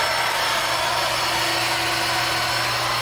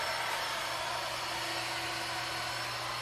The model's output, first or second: second